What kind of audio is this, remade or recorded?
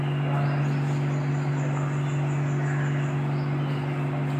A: recorded